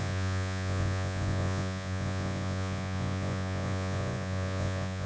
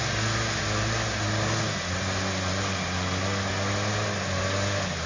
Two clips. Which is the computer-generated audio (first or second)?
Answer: first